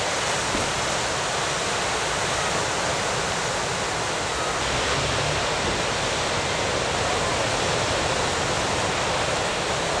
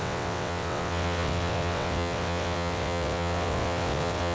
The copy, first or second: second